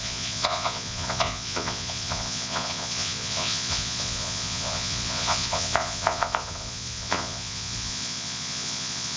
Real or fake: fake